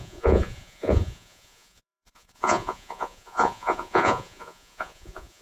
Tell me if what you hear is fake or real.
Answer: fake